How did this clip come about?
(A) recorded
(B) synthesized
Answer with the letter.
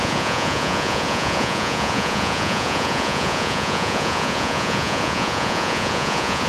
B